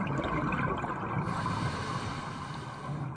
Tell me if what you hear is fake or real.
real